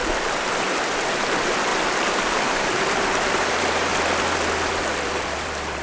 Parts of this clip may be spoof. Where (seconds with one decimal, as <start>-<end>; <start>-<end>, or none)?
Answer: 0.0-3.9; 4.5-5.8